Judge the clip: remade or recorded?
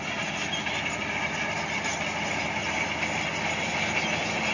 recorded